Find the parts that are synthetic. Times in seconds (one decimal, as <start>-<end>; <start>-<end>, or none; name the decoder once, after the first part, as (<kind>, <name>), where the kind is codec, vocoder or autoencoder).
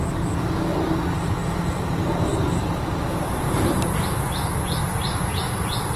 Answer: 1.4-4.8 (vocoder, BigVGAN v2)